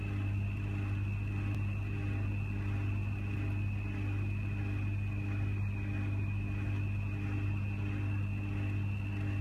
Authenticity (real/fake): real